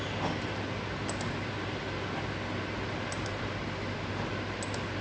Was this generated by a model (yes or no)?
no